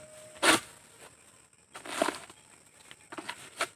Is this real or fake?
real